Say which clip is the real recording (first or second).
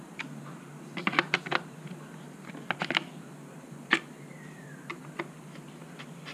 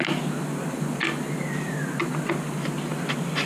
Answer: second